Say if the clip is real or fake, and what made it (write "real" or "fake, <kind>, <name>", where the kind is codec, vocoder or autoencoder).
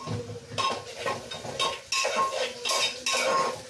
real